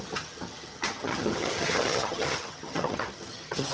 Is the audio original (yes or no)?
no